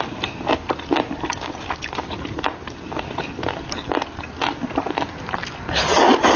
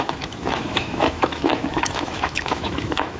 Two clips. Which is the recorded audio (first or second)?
first